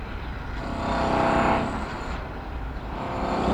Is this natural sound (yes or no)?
yes